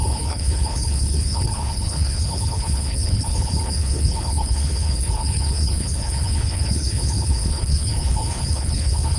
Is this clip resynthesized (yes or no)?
yes